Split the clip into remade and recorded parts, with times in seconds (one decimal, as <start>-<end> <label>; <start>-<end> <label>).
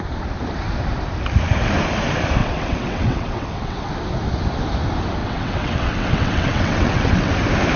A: 0.0-2.4 recorded; 2.4-3.9 remade; 3.9-5.2 recorded; 5.2-7.3 remade; 7.3-7.8 recorded